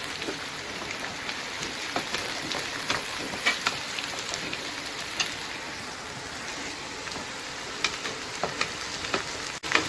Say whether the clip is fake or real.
real